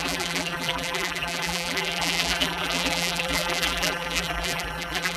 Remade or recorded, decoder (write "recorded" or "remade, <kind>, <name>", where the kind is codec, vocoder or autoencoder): remade, vocoder, BigVGAN v2